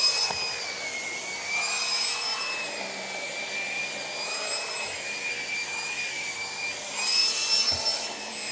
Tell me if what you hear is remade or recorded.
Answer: remade